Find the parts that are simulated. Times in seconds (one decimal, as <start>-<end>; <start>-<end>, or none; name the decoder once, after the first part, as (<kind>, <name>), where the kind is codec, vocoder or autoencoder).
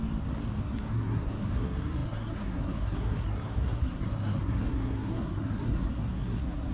0.6-6.7 (codec, SNAC)